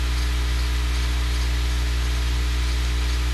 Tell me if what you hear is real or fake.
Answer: real